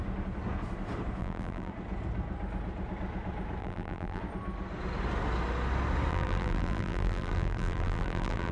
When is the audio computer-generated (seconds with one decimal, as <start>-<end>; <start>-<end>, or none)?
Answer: 1.2-1.7; 3.6-4.2; 6.1-8.5